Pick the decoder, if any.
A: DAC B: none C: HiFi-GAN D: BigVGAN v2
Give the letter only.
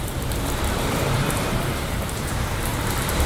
D